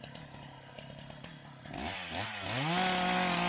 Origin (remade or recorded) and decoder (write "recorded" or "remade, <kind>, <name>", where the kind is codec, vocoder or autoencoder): recorded